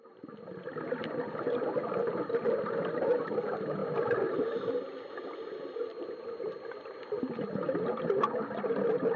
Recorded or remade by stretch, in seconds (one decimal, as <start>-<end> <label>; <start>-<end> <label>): 0.0-9.2 recorded